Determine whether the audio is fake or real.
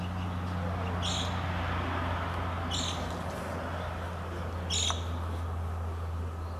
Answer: real